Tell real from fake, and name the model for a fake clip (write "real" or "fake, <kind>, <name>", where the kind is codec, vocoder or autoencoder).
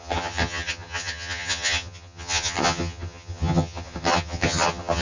fake, vocoder, HiFi-GAN